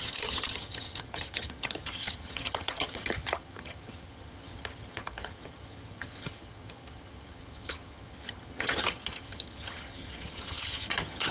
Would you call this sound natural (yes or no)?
no